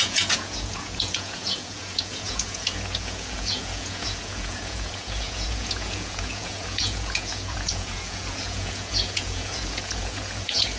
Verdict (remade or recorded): remade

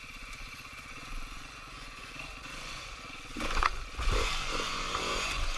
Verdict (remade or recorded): remade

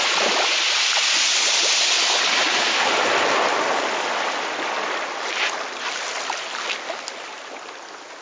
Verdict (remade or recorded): recorded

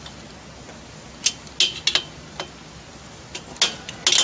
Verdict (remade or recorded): recorded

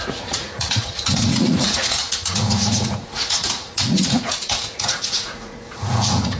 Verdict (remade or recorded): remade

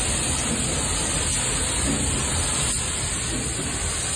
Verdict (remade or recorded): recorded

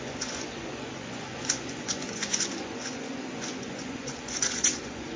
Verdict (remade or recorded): remade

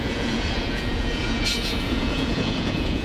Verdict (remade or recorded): remade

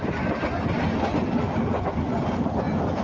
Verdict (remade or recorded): recorded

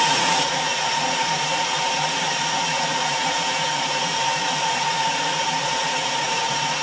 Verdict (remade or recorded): remade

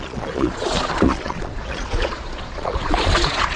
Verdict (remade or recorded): remade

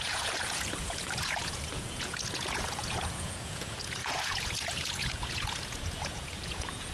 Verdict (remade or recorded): remade